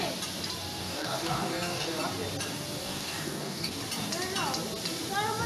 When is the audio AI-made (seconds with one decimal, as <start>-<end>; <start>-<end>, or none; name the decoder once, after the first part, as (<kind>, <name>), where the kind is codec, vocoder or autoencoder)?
0.8-2.0 (codec, DAC); 2.8-3.8